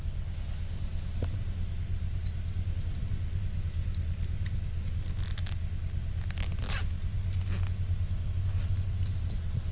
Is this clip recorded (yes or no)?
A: yes